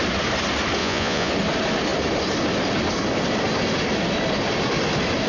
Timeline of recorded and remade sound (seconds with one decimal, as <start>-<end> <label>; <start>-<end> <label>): 0.0-0.8 recorded; 0.8-1.3 remade; 1.3-5.3 recorded